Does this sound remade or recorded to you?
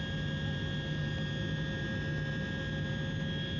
recorded